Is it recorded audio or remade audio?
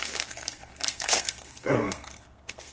remade